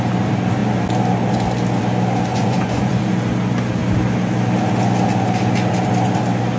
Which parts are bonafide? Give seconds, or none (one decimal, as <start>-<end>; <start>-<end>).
0.0-2.3; 3.0-6.6